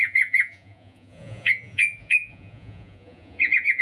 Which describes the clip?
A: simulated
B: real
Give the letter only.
A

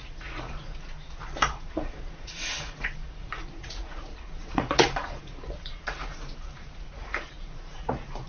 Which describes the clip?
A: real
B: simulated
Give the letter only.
B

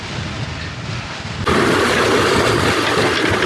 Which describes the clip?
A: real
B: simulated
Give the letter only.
A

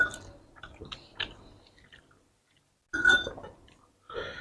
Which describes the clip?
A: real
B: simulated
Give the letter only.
A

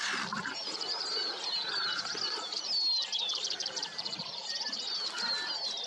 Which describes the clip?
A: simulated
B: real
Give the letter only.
B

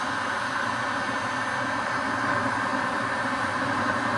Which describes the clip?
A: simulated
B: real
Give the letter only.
B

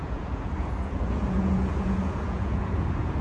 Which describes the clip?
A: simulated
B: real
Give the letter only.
A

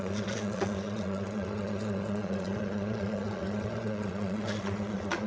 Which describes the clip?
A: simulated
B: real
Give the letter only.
A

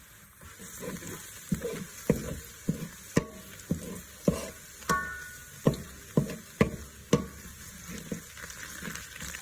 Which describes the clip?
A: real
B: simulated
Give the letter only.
A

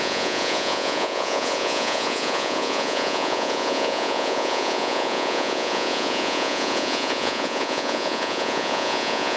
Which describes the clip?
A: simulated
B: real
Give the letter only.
A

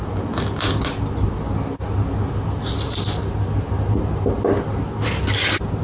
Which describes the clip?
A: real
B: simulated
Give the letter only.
A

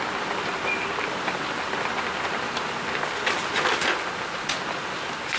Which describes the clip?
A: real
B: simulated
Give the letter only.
A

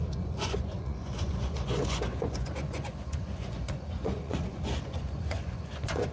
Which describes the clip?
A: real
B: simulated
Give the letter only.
B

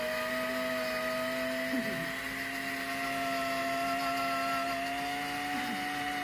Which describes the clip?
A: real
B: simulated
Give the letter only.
A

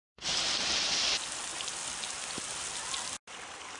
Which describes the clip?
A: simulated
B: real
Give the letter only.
B